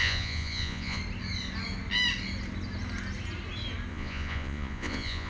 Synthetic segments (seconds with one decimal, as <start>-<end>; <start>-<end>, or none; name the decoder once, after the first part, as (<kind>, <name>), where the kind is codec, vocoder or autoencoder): 0.0-1.0 (vocoder, Vocos); 3.9-5.3